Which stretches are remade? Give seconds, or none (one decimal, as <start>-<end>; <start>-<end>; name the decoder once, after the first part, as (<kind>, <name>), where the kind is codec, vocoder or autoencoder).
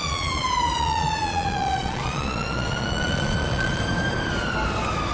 0.0-3.8 (vocoder, Vocos)